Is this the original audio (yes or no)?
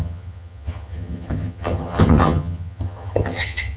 no